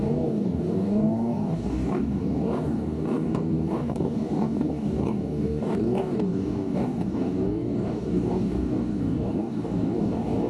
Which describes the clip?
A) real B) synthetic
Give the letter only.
B